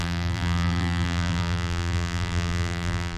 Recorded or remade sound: remade